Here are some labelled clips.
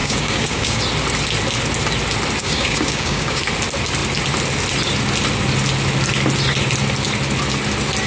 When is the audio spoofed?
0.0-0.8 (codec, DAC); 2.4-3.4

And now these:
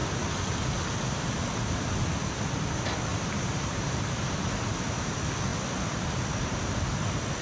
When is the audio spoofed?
3.1-4.1 (vocoder, BigVGAN v2)